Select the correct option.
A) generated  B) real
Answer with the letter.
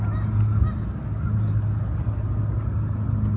B